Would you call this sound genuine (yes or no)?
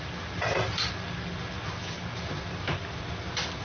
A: yes